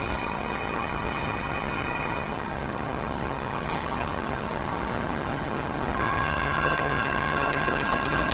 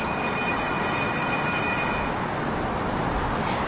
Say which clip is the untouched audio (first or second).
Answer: second